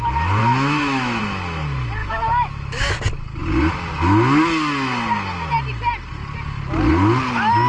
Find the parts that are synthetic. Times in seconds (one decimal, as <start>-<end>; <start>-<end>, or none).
0.4-1.2; 2.0-2.9